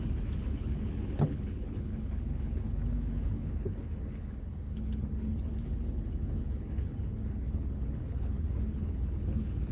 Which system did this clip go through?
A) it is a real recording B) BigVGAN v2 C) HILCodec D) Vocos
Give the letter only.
C